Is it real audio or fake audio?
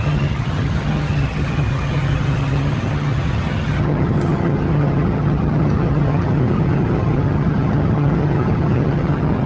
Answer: fake